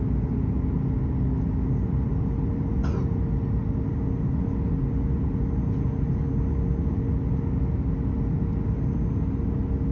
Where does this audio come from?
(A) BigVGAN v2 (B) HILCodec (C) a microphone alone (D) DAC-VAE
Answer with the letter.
C